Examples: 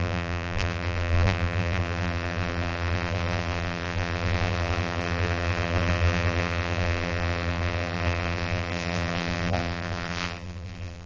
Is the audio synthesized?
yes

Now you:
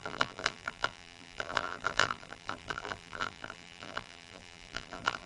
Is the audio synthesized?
yes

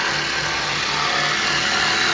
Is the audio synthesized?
no